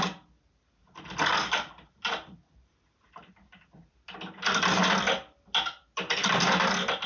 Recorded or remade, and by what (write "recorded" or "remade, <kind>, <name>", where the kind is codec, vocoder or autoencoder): recorded